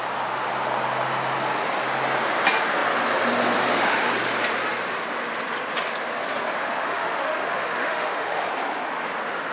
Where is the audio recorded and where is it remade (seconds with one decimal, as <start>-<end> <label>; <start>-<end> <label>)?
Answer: 0.0-6.6 recorded; 6.6-8.5 remade; 8.5-9.5 recorded